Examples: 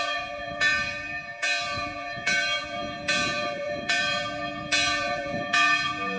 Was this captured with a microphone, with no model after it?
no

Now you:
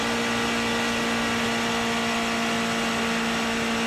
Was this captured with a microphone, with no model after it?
yes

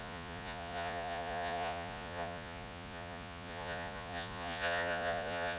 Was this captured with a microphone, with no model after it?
no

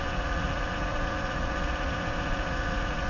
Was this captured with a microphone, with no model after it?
no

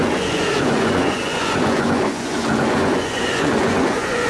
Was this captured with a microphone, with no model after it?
no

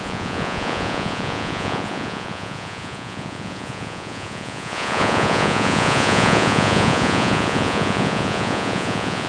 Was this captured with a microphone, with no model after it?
no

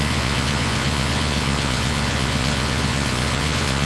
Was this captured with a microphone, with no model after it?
no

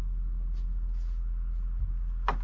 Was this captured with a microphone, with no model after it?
yes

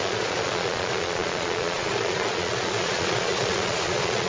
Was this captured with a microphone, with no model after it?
no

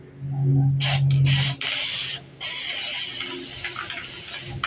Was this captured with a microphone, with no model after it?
yes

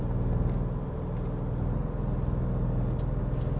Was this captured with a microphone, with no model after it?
yes